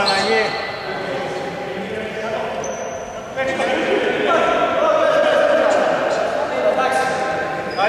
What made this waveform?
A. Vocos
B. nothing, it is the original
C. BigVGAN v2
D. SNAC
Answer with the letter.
B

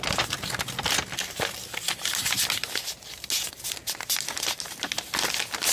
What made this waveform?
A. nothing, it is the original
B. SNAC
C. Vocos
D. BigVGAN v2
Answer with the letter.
A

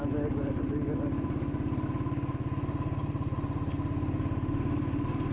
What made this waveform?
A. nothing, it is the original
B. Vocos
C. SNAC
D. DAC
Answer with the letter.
A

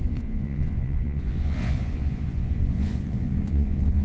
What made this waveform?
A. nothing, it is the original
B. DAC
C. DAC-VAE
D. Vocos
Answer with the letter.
D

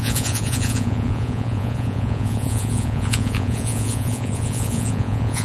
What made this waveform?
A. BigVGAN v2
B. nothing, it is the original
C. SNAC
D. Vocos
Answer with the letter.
D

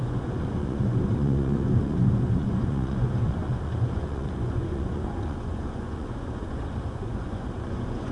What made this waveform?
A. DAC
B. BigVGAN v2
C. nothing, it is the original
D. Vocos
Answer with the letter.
D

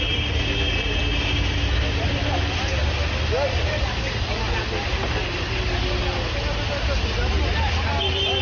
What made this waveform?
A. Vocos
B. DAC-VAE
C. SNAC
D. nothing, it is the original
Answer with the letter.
D